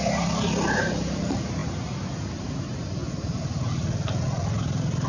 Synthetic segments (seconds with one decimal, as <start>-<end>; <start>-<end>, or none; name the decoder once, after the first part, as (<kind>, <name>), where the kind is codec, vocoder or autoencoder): none